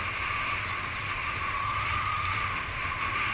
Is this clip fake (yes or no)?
no